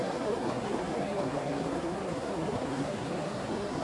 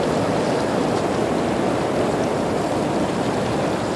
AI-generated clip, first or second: first